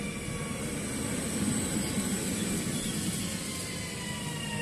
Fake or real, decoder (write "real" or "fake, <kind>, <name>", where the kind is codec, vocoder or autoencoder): real